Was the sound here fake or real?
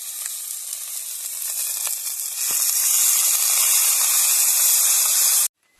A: real